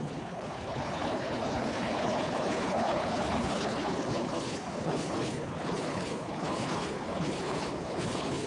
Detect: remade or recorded remade